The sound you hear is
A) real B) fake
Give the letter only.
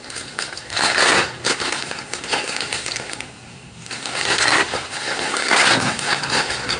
B